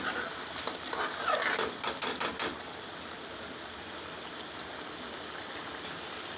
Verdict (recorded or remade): recorded